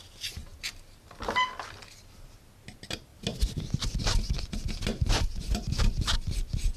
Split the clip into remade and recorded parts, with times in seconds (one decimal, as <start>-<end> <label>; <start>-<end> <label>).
0.0-6.8 recorded

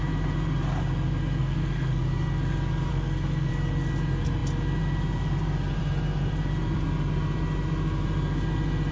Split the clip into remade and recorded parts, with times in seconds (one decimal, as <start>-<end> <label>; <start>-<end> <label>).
0.0-1.4 recorded; 1.4-2.0 remade; 2.0-2.9 recorded; 2.9-3.5 remade; 3.5-8.9 recorded